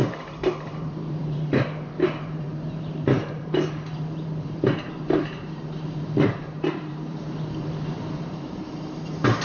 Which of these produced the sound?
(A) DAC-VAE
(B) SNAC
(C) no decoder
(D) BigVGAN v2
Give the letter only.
D